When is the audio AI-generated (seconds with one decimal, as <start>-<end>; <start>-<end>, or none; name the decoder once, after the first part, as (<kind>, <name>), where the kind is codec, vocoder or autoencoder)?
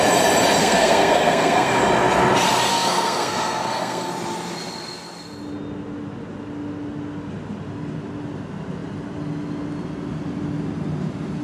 0.6-1.8 (codec, SNAC); 2.7-4.1